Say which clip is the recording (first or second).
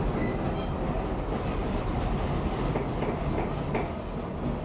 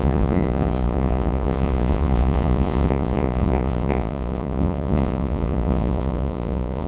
first